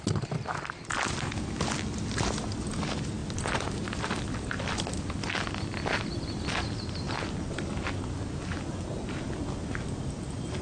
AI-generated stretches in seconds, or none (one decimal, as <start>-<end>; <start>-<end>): none